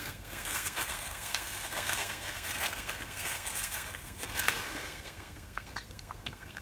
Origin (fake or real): fake